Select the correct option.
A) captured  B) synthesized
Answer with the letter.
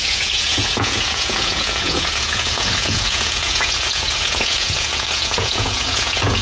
B